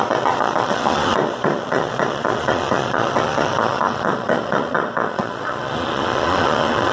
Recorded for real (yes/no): no